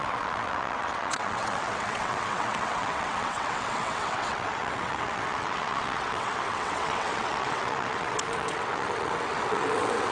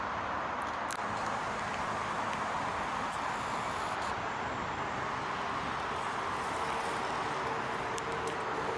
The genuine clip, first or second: second